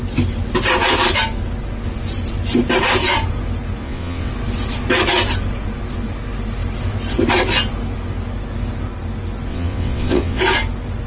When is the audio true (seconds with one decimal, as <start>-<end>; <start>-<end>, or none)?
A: 0.0-3.8; 4.3-9.5; 10.4-11.1